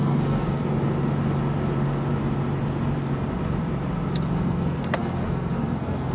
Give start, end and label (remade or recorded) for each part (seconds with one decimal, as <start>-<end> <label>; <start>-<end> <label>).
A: 0.0-0.6 remade; 0.6-4.3 recorded; 4.3-6.1 remade

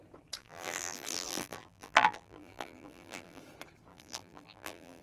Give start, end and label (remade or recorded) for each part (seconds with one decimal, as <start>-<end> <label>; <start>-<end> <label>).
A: 0.0-0.4 recorded; 0.4-3.4 remade; 3.4-3.9 recorded; 3.9-5.0 remade

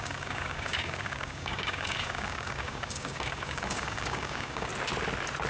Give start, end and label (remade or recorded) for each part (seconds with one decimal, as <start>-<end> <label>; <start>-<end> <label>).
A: 0.0-4.7 remade; 4.7-5.5 recorded

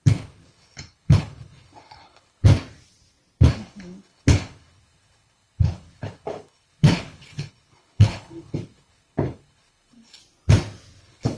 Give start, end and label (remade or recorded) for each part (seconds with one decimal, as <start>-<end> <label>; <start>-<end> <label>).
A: 0.0-2.5 remade; 2.5-3.5 recorded; 3.5-10.2 remade; 10.2-11.0 recorded; 11.0-11.4 remade

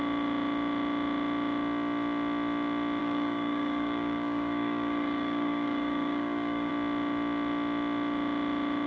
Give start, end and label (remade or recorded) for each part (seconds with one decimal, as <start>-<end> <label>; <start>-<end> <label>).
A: 0.0-3.0 recorded; 3.0-6.7 remade; 6.7-8.9 recorded

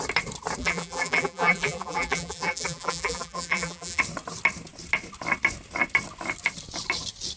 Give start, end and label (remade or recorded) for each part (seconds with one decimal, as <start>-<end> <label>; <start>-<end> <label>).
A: 0.0-0.6 recorded; 0.6-4.0 remade; 4.0-7.4 recorded